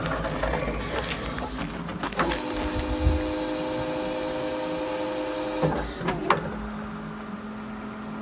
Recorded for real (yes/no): yes